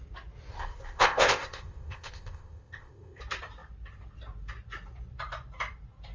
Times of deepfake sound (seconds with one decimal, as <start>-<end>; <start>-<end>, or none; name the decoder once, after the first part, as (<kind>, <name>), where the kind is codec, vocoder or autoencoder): 0.5-3.2 (codec, ZipCodec)